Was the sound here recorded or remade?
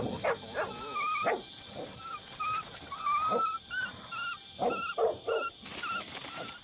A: recorded